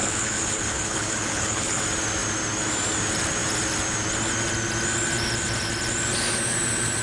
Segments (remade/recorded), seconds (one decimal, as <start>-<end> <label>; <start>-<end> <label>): 0.0-1.8 remade; 1.8-7.0 recorded